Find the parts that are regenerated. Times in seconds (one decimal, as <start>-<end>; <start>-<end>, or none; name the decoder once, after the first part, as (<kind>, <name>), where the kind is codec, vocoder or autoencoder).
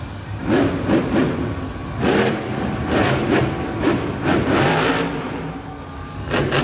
1.8-5.4 (vocoder, BigVGAN v2)